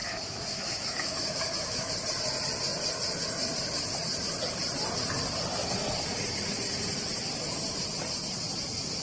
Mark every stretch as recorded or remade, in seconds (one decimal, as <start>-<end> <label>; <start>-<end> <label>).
0.0-1.9 remade; 1.9-9.0 recorded